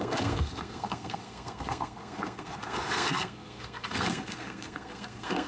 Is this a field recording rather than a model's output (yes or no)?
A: no